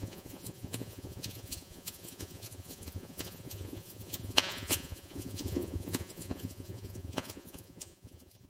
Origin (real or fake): fake